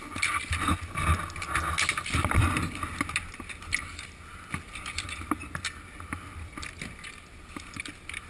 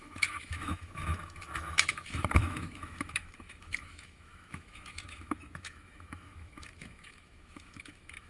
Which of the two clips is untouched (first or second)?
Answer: first